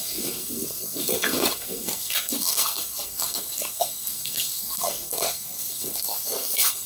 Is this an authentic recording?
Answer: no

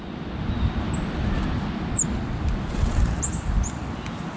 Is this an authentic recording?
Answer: yes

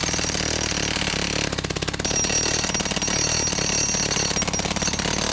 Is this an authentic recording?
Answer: yes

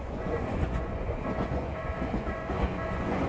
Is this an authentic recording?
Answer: no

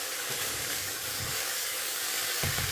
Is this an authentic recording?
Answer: no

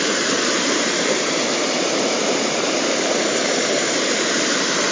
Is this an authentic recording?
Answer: no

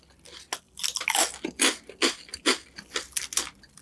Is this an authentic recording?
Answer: yes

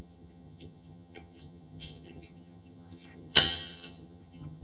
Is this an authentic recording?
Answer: no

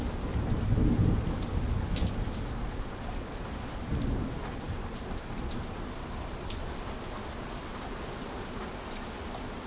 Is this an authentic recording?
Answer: yes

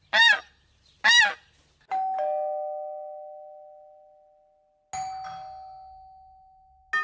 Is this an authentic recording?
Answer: yes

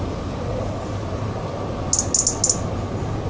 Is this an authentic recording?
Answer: yes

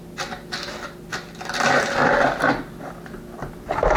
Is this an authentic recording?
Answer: yes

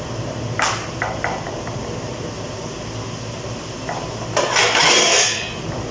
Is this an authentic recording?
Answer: no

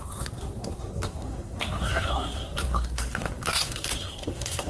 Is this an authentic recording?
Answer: no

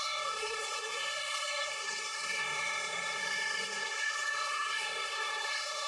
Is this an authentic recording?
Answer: no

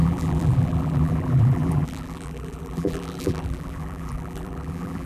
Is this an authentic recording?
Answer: no